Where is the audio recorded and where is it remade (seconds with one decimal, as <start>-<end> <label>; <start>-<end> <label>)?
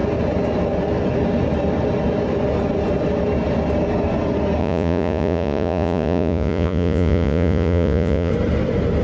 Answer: 0.0-4.6 recorded; 4.6-8.3 remade; 8.3-9.0 recorded